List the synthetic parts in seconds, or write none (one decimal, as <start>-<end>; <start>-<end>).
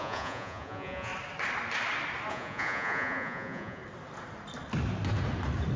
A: 0.0-1.1; 2.3-3.8